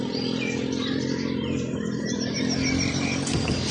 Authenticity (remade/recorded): recorded